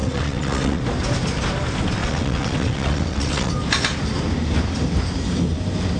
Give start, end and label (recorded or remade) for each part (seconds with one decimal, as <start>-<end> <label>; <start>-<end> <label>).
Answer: 0.0-0.8 remade; 0.8-2.0 recorded; 2.0-3.5 remade; 3.5-6.0 recorded

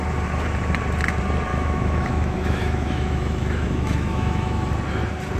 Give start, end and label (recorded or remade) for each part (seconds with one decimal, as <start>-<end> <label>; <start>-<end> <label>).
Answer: 0.0-1.5 recorded; 1.5-4.7 remade; 4.7-5.4 recorded